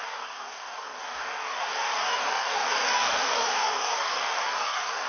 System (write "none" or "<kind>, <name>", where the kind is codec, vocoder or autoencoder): codec, DAC